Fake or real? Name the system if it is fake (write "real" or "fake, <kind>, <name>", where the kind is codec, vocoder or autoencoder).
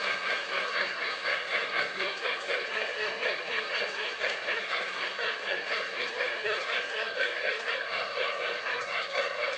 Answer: fake, codec, SNAC